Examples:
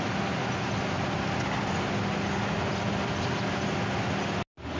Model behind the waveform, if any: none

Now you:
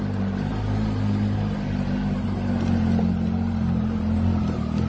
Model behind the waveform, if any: none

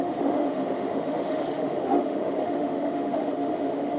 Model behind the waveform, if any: autoencoder, DAC-VAE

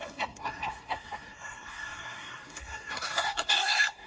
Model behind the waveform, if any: codec, SNAC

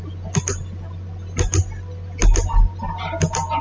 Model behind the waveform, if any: none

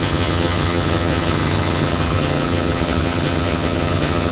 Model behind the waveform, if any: vocoder, HiFi-GAN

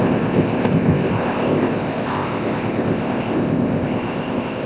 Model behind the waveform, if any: codec, ZipCodec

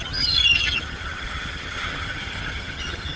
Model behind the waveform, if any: vocoder, HiFi-GAN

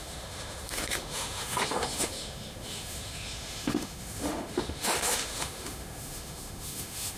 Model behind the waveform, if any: autoencoder, DAC-VAE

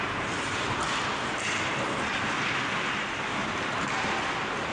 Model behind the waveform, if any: none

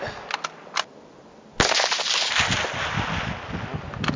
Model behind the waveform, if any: none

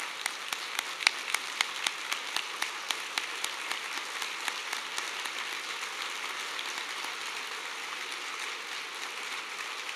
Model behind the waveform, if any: none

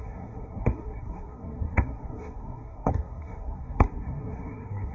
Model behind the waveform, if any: codec, SNAC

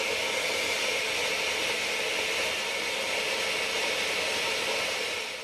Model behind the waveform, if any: none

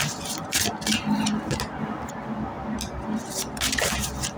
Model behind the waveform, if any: none